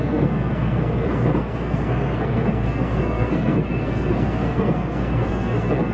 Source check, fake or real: fake